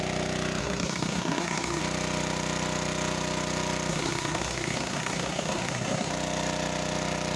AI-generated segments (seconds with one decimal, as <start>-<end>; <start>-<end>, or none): 0.6-1.8; 3.9-6.1